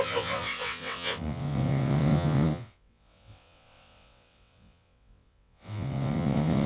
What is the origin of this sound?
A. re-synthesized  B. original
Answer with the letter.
A